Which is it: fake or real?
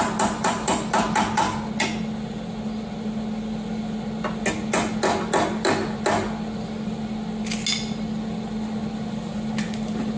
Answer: real